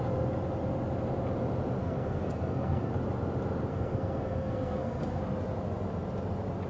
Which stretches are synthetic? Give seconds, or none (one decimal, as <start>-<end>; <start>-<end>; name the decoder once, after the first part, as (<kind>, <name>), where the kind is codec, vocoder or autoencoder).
1.8-2.9 (codec, SNAC); 3.7-5.2